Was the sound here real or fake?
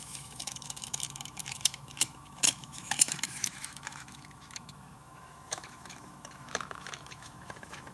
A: fake